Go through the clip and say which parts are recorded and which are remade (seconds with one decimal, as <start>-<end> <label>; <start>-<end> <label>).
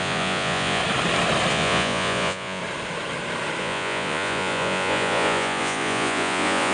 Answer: 0.0-0.8 remade; 0.8-1.5 recorded; 1.5-2.6 remade; 2.6-3.6 recorded; 3.6-6.7 remade